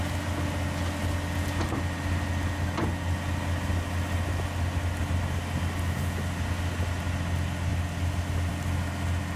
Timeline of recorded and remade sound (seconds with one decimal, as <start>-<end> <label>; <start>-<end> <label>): 0.0-9.4 recorded